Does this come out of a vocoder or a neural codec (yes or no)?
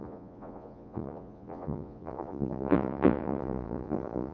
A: yes